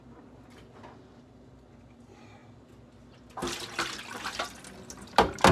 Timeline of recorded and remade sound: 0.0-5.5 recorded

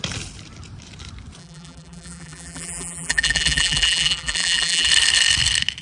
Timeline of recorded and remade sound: 0.0-1.4 recorded; 1.4-4.9 remade; 4.9-5.8 recorded

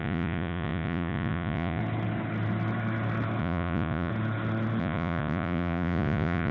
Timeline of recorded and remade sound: 0.0-1.8 remade; 1.8-3.4 recorded; 3.4-4.1 remade; 4.1-4.8 recorded; 4.8-6.5 remade

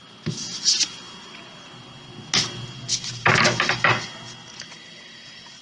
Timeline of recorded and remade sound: 0.0-5.6 recorded

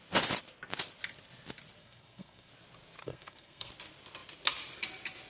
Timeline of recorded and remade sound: 0.0-1.8 recorded; 1.8-2.5 remade; 2.5-3.0 recorded; 3.0-3.7 remade; 3.7-5.3 recorded